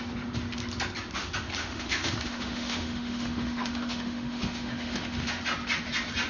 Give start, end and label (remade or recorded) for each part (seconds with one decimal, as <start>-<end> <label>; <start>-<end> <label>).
0.0-1.6 recorded; 1.6-5.4 remade; 5.4-6.3 recorded